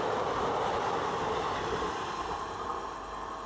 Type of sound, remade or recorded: recorded